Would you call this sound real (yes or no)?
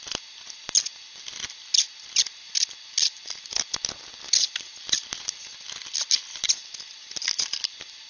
yes